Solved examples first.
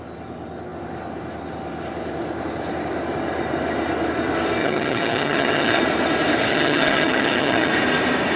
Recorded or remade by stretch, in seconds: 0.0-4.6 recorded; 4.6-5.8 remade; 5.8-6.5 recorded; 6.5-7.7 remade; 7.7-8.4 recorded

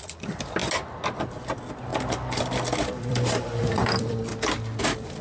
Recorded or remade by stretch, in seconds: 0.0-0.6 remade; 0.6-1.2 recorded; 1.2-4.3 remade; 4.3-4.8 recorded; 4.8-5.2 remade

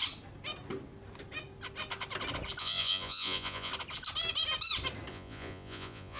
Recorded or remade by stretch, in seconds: 0.0-2.6 recorded; 2.6-3.7 remade; 3.7-5.1 recorded; 5.1-6.2 remade